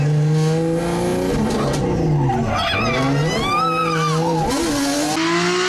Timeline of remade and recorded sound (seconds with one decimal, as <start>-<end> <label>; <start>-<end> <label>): 0.0-5.7 recorded